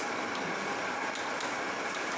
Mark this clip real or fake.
real